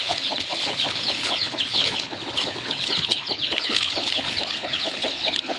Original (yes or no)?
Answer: no